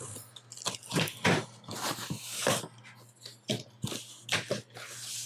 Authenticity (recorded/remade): recorded